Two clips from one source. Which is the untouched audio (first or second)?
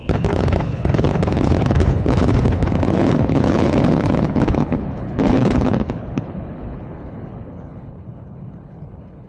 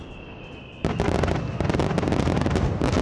second